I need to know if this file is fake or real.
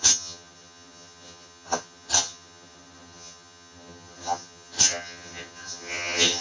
fake